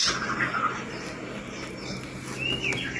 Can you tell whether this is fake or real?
real